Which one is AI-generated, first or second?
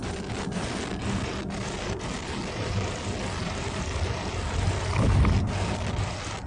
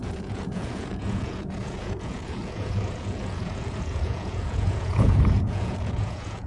second